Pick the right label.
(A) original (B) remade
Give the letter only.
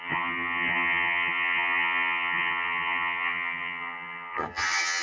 B